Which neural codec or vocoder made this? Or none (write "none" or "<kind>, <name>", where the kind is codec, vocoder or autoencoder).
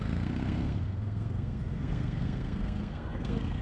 codec, SNAC